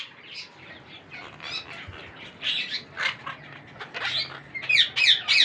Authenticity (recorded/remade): recorded